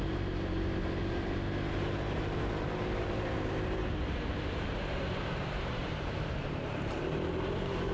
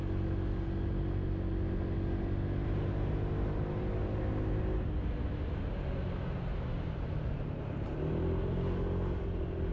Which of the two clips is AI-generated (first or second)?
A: first